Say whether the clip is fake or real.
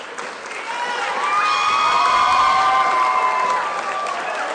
real